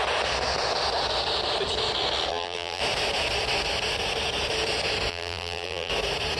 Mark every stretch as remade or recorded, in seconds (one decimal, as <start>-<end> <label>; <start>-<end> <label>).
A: 0.0-2.3 recorded; 2.3-2.8 remade; 2.8-5.1 recorded; 5.1-5.9 remade; 5.9-6.4 recorded